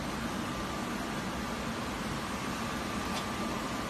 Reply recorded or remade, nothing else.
recorded